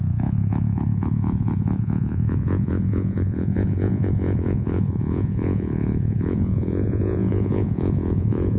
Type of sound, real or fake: fake